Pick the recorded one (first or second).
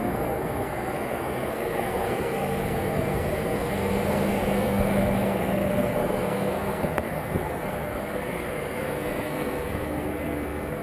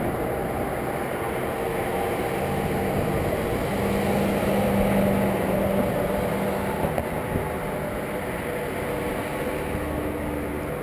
second